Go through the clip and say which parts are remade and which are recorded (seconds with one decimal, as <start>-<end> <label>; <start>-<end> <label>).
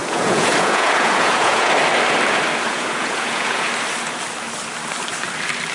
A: 0.0-1.7 remade; 1.7-2.7 recorded; 2.7-3.7 remade; 3.7-5.7 recorded